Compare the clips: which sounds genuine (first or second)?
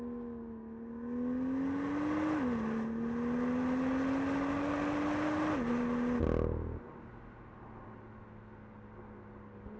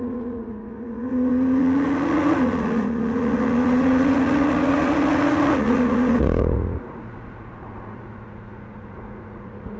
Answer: first